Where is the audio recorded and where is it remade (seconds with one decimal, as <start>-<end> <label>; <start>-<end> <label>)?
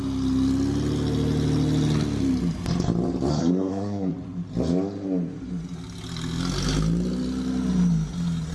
0.0-3.3 recorded; 3.3-4.1 remade; 4.1-8.5 recorded